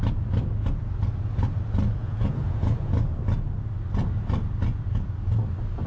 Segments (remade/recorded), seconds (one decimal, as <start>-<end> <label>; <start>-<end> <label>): 0.0-2.0 recorded; 2.0-2.9 remade; 2.9-5.9 recorded